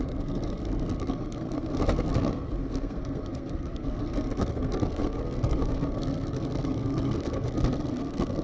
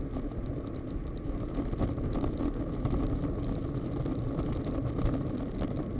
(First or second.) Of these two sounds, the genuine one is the second